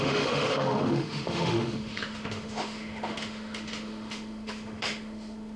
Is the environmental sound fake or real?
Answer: fake